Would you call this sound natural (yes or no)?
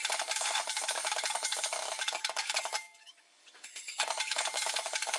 no